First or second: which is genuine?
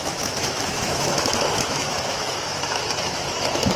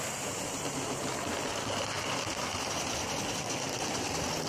second